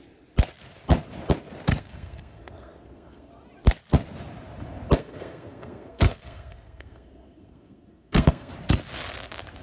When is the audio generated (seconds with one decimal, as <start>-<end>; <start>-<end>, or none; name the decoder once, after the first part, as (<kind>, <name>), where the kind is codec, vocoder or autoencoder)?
1.8-3.3 (codec, SNAC); 5.0-8.5